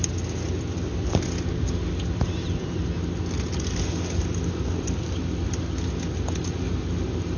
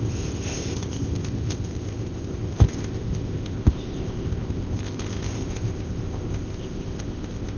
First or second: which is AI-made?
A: second